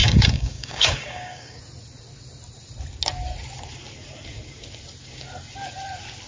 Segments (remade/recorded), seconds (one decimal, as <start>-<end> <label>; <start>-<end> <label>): 0.0-1.6 remade; 1.6-6.3 recorded